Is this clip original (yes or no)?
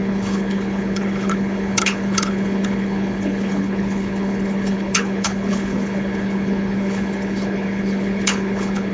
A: no